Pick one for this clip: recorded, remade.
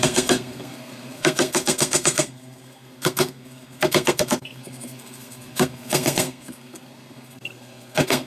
remade